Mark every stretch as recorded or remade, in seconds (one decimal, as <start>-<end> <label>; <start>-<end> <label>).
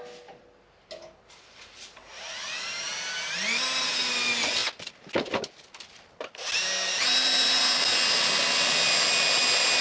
0.0-9.8 recorded